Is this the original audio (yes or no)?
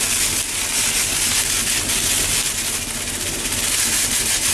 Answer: yes